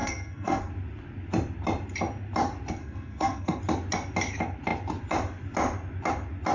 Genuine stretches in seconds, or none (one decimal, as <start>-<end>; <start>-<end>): 0.7-2.8; 3.6-6.5